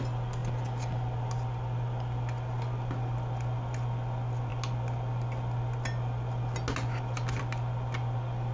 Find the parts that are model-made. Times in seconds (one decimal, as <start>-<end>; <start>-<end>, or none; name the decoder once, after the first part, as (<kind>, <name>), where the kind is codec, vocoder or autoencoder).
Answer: none